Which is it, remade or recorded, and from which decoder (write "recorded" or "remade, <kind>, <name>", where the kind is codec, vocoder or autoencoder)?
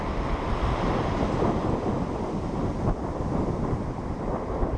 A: recorded